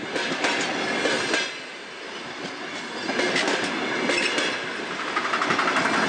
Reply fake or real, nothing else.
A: real